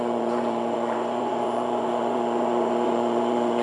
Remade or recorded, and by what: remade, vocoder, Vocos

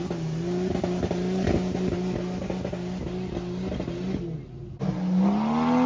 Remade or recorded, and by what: recorded